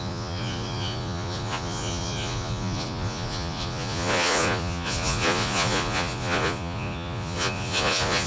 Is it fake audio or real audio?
fake